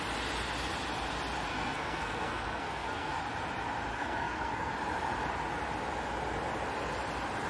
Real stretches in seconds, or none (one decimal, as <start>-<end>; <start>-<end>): 0.0-1.5; 3.2-3.9; 4.7-7.5